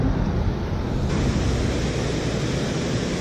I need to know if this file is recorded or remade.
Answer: recorded